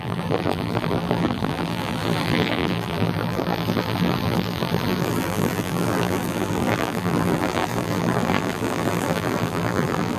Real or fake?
fake